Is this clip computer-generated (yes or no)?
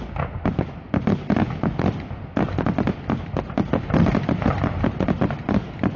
no